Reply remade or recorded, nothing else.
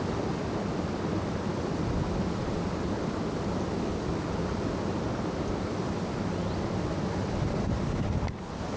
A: recorded